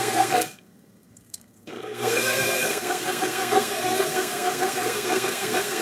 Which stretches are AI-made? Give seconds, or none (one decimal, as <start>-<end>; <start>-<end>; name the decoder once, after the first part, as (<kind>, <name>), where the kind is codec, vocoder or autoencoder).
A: 0.0-5.8 (codec, SNAC)